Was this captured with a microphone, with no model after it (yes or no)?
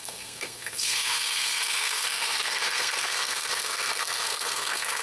no